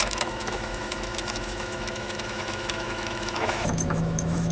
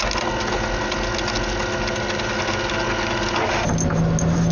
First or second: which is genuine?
second